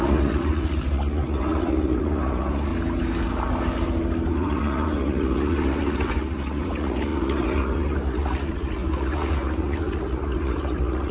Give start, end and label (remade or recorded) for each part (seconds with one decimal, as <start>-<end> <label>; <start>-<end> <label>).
0.0-2.7 remade; 2.7-4.3 recorded; 4.3-11.1 remade